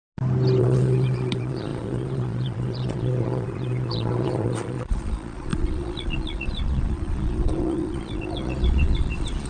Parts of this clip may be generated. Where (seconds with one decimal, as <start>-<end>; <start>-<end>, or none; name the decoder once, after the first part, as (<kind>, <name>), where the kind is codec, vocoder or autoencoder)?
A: 0.6-9.5 (vocoder, Vocos)